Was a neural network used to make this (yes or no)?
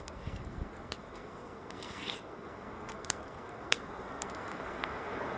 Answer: yes